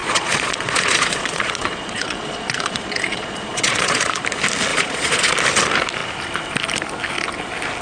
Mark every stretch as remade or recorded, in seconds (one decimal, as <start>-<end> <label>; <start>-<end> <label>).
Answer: 0.0-4.2 remade; 4.2-4.7 recorded; 4.7-5.3 remade; 5.3-7.8 recorded